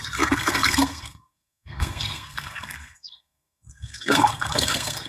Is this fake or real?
fake